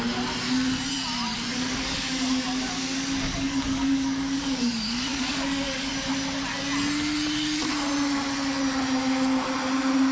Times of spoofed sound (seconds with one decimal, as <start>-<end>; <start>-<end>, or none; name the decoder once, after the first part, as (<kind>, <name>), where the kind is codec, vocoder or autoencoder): 1.5-5.9 (codec, DAC)